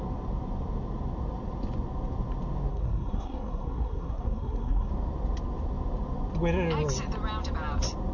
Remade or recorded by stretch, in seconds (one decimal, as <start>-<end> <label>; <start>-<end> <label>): 0.0-2.7 recorded; 2.7-4.9 remade; 4.9-8.1 recorded